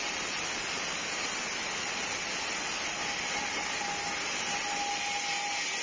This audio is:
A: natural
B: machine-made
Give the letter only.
A